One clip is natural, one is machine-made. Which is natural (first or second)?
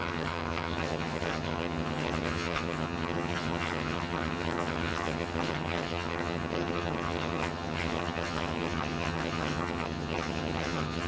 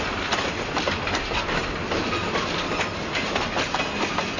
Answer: second